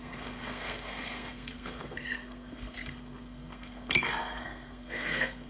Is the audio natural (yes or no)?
no